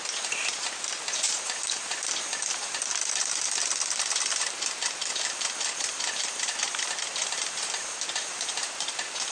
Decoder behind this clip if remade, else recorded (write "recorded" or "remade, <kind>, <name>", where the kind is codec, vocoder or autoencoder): remade, vocoder, BigVGAN v2